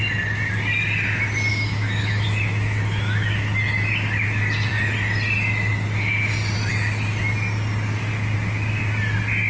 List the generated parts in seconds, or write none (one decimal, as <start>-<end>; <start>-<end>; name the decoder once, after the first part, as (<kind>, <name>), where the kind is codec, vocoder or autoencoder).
1.5-3.5 (autoencoder, DAC-VAE)